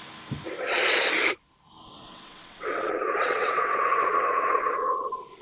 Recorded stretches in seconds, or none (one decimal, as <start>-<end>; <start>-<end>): 0.0-1.9